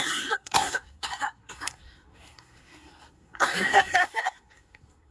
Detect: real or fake fake